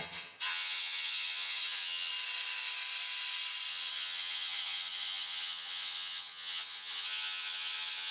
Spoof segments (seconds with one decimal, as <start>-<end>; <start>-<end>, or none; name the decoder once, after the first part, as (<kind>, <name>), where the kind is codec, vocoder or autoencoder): 0.0-2.1 (vocoder, HiFi-GAN); 3.7-8.1